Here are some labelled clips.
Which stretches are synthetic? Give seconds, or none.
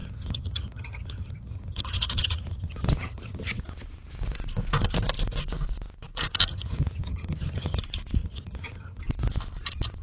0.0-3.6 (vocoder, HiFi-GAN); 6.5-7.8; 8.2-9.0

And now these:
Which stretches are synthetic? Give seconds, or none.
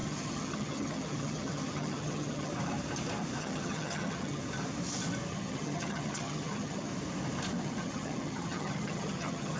0.0-2.5 (vocoder, HiFi-GAN); 3.4-4.4; 5.3-6.9; 7.6-9.6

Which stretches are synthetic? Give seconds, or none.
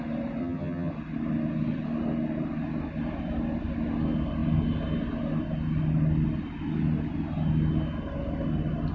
0.4-0.9 (vocoder, HiFi-GAN)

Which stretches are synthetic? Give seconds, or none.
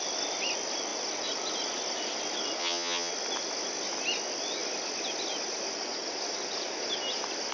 2.6-3.1 (vocoder, HiFi-GAN)